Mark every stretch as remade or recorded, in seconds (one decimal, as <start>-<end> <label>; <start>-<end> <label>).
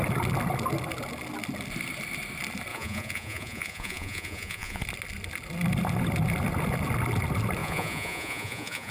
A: 0.0-2.7 recorded; 2.7-4.8 remade; 4.8-7.6 recorded; 7.6-8.9 remade